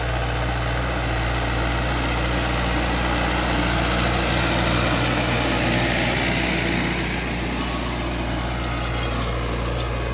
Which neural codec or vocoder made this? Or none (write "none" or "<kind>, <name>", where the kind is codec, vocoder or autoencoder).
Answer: none